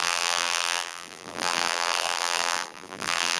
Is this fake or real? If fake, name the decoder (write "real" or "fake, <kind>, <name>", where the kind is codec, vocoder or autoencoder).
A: fake, vocoder, BigVGAN v2